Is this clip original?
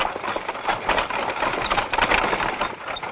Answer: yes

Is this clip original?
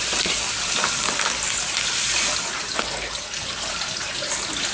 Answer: yes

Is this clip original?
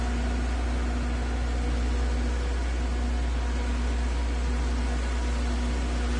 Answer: yes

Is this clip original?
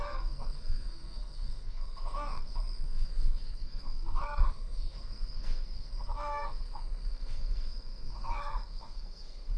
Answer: no